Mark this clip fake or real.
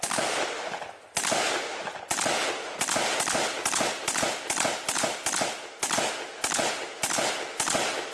real